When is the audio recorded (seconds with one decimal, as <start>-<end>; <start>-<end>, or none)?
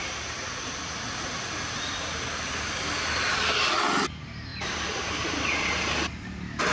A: 0.0-4.5; 5.5-6.7